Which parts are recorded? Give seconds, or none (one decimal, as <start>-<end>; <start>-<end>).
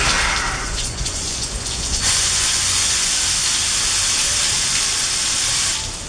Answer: 0.0-0.6; 3.2-6.1